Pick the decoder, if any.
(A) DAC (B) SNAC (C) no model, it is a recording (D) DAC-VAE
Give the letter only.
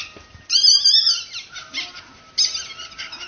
C